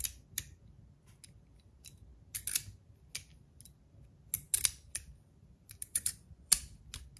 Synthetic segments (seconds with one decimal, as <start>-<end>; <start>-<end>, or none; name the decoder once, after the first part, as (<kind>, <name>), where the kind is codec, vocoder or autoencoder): 5.9-6.5 (vocoder, Vocos)

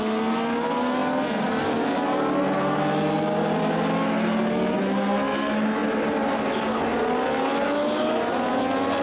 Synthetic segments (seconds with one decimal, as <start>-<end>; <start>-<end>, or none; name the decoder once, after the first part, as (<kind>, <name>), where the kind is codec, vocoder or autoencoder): none